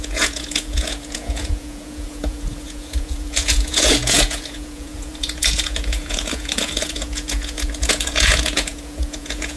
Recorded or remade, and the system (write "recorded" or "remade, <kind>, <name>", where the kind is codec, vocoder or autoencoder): remade, vocoder, Vocos